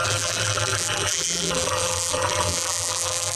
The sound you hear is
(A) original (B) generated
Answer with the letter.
B